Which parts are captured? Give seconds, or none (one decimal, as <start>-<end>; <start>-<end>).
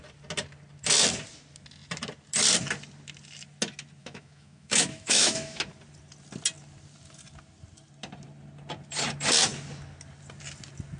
0.0-4.0; 5.6-11.0